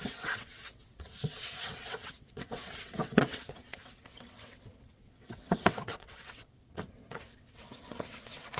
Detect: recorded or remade remade